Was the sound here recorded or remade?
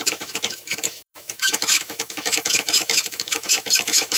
remade